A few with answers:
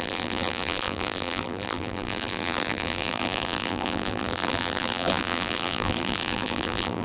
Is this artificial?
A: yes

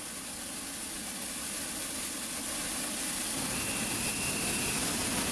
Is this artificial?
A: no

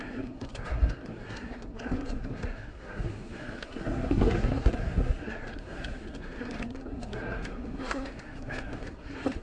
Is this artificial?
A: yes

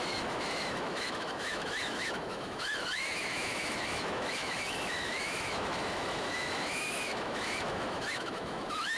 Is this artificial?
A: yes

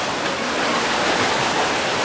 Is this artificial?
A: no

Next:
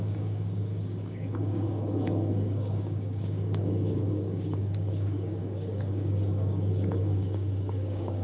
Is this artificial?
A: yes